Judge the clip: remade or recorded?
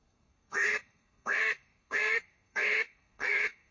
remade